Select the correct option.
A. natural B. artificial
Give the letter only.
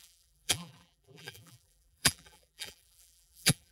B